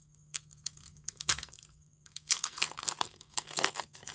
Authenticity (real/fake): fake